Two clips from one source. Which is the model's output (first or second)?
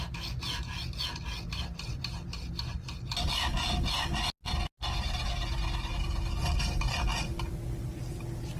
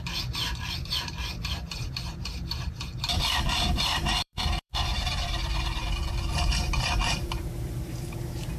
second